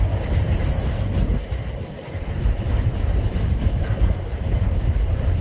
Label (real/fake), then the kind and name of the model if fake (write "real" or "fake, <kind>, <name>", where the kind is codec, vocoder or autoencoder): fake, vocoder, BigVGAN v2